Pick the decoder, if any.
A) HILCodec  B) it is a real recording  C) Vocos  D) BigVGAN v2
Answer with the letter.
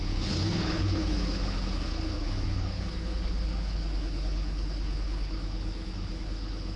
A